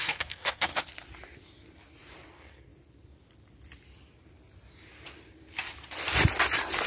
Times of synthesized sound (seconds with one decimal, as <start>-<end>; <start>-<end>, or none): 0.0-0.7; 2.3-2.7